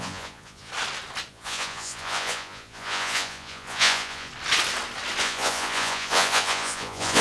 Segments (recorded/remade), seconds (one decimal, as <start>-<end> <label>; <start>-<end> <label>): 0.0-0.7 remade; 0.7-1.3 recorded; 1.3-4.3 remade; 4.3-5.2 recorded; 5.2-7.2 remade